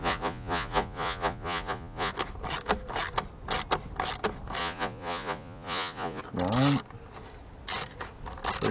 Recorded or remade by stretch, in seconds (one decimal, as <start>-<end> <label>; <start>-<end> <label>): 0.0-2.1 remade; 2.1-4.6 recorded; 4.6-6.2 remade; 6.2-8.7 recorded